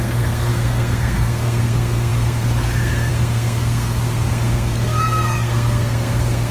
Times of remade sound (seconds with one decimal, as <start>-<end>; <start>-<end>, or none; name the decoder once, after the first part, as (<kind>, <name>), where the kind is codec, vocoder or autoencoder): 0.0-6.5 (codec, SNAC)